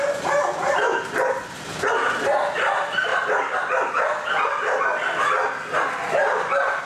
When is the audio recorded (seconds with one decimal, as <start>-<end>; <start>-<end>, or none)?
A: 0.0-6.9